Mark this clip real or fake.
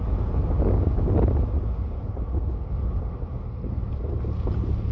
real